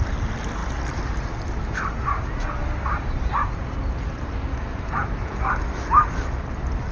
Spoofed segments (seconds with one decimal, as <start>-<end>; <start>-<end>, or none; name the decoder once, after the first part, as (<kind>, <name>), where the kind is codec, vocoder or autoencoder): 4.5-6.4 (autoencoder, DAC-VAE)